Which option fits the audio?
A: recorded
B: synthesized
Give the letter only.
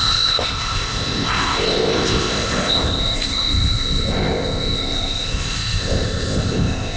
B